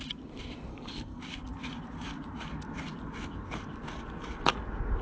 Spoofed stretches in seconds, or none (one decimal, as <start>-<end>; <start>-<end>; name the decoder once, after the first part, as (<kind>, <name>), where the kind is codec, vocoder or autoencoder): 0.7-1.2 (codec, SNAC)